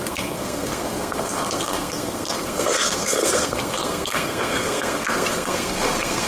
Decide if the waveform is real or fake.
fake